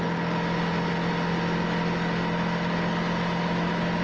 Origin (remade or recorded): recorded